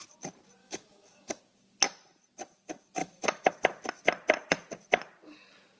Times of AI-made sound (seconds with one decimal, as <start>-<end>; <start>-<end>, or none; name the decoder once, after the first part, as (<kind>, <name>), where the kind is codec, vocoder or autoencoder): 0.6-1.4 (autoencoder, DAC-VAE); 3.0-3.5